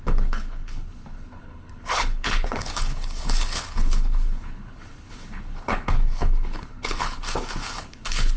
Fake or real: fake